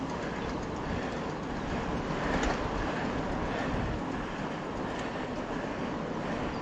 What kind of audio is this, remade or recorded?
recorded